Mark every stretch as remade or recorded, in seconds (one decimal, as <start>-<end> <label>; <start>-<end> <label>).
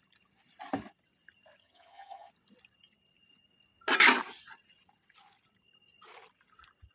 0.0-1.6 recorded; 1.6-2.3 remade; 2.3-6.9 recorded